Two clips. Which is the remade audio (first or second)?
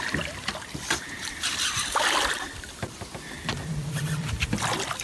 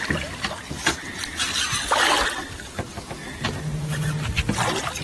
first